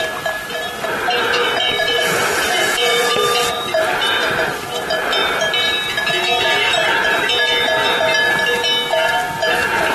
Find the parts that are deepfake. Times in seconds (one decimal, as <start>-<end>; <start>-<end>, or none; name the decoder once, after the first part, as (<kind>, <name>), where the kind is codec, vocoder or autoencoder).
1.2-3.7 (vocoder, Vocos)